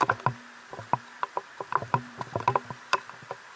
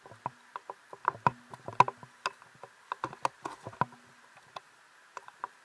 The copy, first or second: first